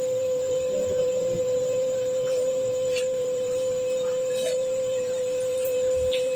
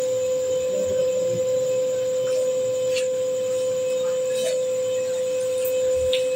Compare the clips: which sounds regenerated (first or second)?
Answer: first